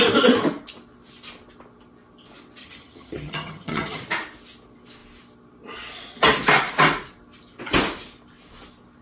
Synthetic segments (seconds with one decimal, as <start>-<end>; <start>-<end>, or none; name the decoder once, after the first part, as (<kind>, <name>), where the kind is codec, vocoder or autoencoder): 2.6-4.0 (vocoder, HiFi-GAN)